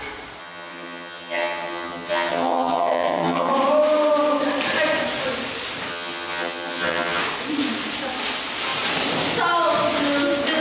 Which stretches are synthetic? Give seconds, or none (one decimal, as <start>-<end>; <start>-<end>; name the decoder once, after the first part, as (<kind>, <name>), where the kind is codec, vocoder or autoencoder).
0.4-3.5 (vocoder, HiFi-GAN); 5.9-7.2